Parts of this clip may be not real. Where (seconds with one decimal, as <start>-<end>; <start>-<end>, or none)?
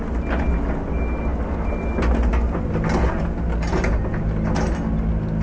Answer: none